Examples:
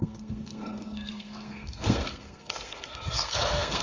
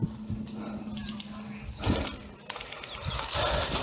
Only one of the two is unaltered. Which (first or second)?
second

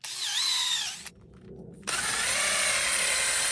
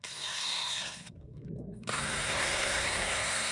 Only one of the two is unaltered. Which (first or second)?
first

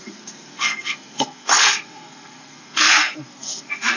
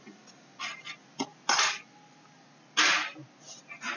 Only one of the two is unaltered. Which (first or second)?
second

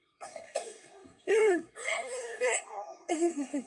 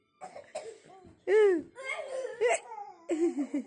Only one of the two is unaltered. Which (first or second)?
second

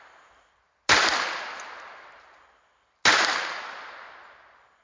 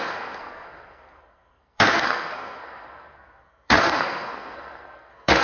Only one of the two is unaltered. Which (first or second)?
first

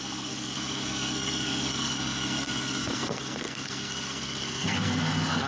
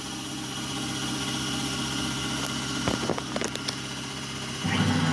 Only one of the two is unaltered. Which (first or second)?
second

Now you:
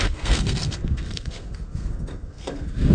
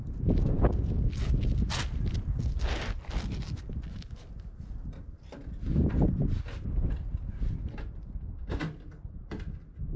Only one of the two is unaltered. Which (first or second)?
second